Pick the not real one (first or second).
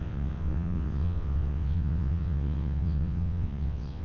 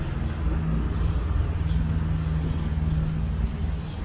first